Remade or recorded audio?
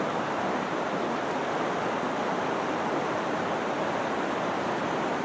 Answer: recorded